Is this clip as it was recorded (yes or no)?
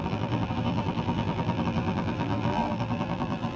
no